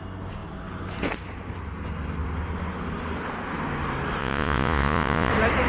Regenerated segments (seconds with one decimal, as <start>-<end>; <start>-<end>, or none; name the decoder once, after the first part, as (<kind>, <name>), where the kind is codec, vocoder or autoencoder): 4.2-5.3 (vocoder, Vocos)